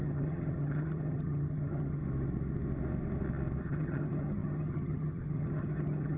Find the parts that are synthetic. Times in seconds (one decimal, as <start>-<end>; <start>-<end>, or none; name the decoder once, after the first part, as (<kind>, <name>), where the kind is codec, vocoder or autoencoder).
0.0-2.0 (vocoder, HiFi-GAN); 3.6-6.2